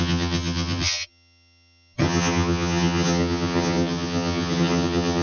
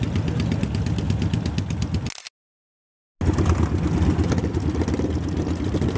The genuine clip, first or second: second